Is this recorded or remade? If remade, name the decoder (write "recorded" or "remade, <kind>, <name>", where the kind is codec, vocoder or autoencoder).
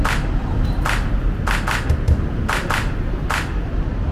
recorded